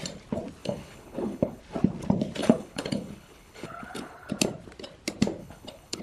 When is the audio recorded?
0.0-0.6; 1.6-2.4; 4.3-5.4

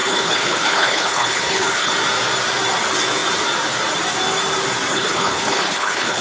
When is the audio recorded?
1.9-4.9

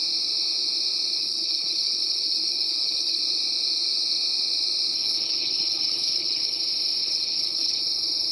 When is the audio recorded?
0.0-1.2; 3.2-5.0; 6.6-7.0; 7.8-8.3

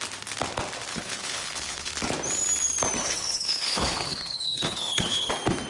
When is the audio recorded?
0.0-0.9; 1.9-3.0; 5.3-5.7

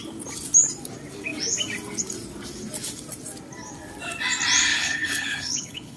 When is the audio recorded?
0.0-4.7